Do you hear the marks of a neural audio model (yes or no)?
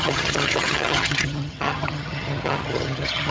yes